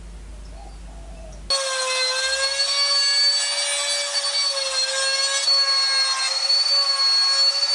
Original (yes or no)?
yes